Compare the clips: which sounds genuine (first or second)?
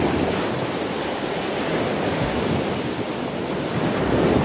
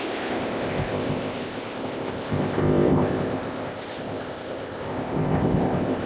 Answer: first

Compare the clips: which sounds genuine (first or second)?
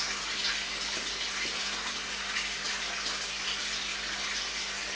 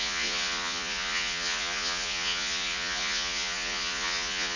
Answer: first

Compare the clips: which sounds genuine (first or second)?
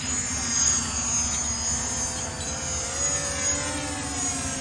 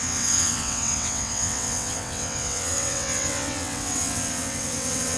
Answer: first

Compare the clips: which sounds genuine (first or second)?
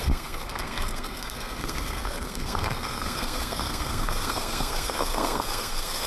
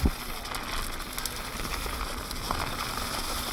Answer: second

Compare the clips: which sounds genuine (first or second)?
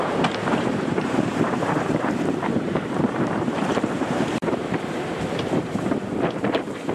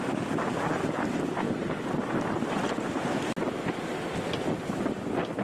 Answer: second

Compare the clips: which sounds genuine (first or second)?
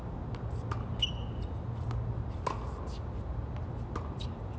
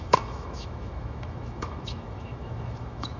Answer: first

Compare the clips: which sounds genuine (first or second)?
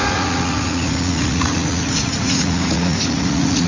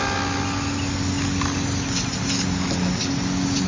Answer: second